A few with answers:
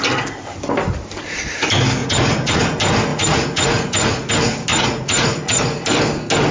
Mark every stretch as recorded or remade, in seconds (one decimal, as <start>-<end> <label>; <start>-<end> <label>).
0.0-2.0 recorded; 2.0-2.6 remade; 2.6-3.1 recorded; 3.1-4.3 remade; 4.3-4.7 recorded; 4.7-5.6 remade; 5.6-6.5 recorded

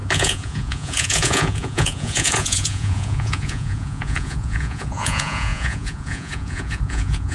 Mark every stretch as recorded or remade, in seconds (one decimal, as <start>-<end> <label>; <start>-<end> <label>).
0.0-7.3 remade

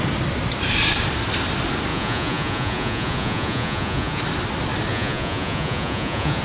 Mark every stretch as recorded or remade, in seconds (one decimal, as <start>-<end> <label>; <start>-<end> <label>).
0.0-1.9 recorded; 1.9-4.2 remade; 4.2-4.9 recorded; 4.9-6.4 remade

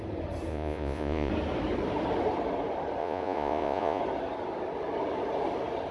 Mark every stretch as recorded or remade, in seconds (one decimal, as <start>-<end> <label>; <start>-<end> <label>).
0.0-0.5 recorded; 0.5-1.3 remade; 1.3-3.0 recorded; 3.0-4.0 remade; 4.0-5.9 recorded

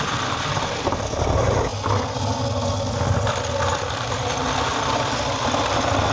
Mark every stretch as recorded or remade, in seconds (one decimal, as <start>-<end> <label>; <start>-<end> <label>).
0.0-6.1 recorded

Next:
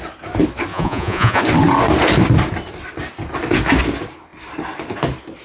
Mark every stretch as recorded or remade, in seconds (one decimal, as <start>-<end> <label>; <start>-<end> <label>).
0.0-0.7 recorded; 0.7-1.4 remade; 1.4-5.4 recorded